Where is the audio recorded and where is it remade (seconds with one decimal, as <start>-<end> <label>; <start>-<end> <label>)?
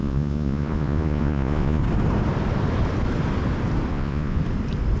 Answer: 0.0-1.8 remade; 1.8-3.9 recorded; 3.9-4.4 remade; 4.4-5.0 recorded